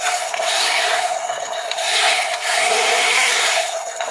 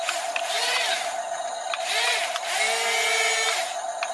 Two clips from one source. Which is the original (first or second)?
second